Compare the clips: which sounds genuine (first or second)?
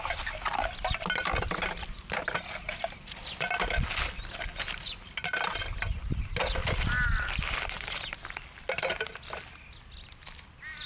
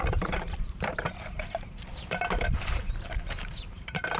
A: first